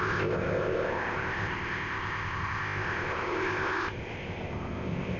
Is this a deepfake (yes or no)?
yes